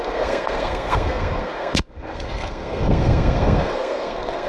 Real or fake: fake